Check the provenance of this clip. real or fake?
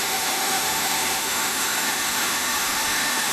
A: fake